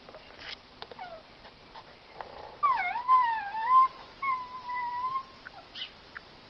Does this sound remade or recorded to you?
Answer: recorded